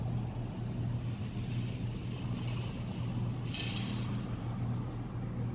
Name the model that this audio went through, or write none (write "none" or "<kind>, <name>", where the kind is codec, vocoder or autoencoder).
none